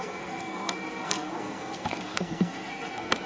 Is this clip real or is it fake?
fake